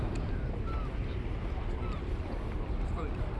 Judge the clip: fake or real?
real